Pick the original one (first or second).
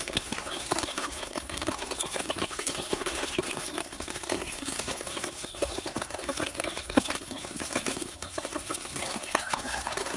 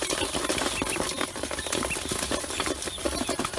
second